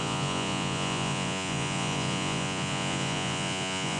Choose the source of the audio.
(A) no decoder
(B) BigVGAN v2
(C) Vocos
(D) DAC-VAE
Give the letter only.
C